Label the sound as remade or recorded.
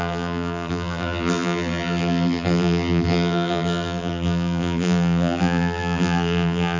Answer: remade